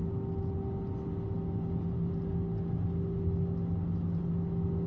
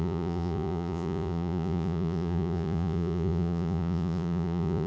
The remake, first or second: second